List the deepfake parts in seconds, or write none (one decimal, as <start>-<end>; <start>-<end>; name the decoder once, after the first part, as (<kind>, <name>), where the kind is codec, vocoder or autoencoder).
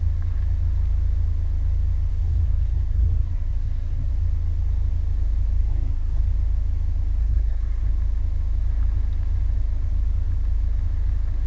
2.1-4.1 (codec, SNAC); 5.6-6.2; 7.2-7.9